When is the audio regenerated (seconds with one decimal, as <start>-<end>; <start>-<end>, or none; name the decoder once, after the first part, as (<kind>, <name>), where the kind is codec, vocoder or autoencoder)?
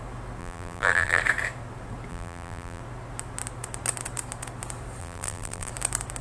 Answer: 0.4-1.2 (vocoder, BigVGAN v2); 2.1-2.8; 5.0-5.7